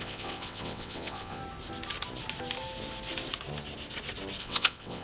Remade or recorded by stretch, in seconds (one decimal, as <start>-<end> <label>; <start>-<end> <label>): 0.0-1.4 remade; 1.4-4.4 recorded; 4.4-5.0 remade